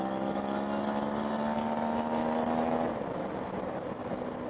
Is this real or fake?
real